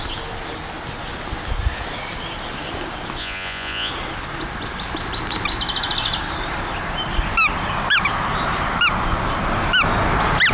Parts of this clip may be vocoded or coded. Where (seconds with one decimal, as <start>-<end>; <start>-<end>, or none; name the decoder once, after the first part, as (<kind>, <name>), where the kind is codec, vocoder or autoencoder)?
3.2-3.9 (vocoder, Vocos)